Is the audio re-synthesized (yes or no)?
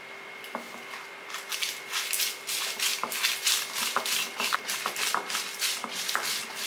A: no